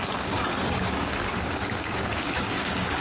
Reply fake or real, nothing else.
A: fake